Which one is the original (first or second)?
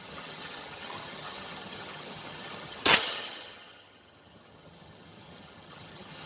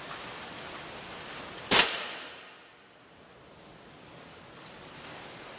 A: second